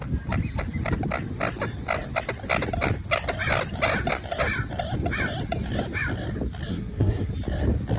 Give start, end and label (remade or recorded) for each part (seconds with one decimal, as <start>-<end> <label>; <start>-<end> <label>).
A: 0.0-6.7 recorded; 6.7-7.3 remade; 7.3-8.0 recorded